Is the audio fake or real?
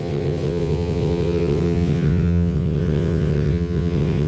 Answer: fake